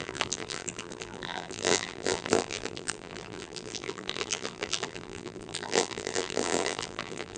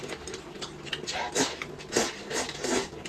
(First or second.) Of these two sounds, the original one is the second